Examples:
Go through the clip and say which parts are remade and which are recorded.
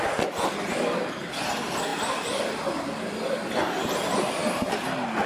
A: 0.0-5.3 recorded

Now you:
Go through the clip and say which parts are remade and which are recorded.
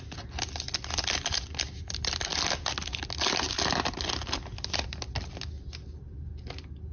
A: 0.0-6.9 recorded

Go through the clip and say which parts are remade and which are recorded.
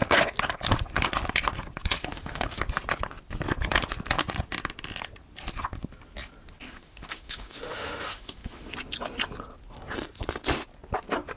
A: 0.0-2.0 recorded; 2.0-2.6 remade; 2.6-6.6 recorded; 6.6-8.7 remade; 8.7-11.4 recorded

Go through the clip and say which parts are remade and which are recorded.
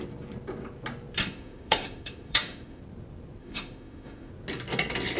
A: 0.0-1.2 recorded; 1.2-2.8 remade; 2.8-3.4 recorded; 3.4-4.3 remade; 4.3-5.2 recorded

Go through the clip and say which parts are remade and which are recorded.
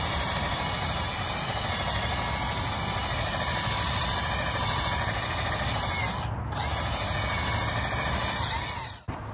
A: 0.0-9.3 recorded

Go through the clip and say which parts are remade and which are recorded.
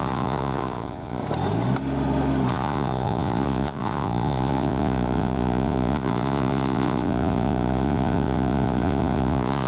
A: 0.0-1.2 remade; 1.2-2.5 recorded; 2.5-9.7 remade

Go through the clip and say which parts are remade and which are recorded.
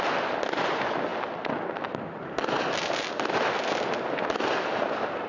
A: 0.0-5.3 recorded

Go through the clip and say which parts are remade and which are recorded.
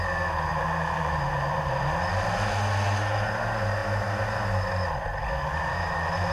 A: 0.0-0.5 recorded; 0.5-1.8 remade; 1.8-6.3 recorded